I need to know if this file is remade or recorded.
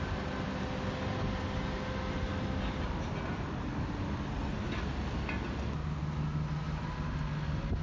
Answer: recorded